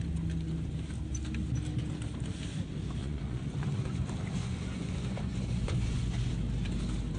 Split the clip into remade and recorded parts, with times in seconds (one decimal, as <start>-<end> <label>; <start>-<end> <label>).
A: 0.0-3.0 recorded; 3.0-4.0 remade; 4.0-4.4 recorded; 4.4-6.3 remade; 6.3-7.2 recorded